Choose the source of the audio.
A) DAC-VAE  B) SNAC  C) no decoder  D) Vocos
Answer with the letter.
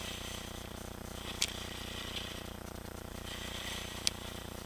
C